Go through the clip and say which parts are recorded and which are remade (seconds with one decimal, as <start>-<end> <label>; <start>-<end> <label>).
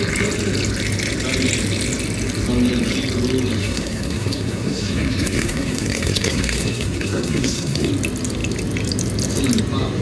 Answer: 0.0-3.6 recorded; 3.6-7.9 remade; 7.9-10.0 recorded